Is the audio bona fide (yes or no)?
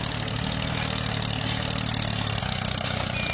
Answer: yes